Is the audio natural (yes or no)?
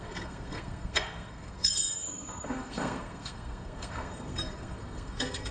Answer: no